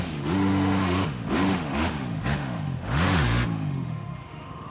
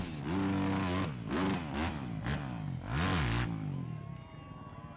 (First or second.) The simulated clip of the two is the first